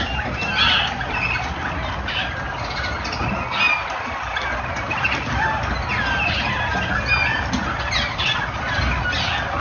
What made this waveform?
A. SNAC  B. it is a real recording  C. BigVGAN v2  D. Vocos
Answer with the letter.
B